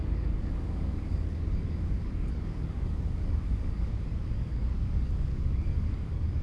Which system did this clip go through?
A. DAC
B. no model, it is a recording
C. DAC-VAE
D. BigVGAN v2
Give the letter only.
A